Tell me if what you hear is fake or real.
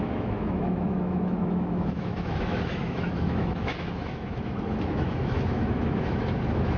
fake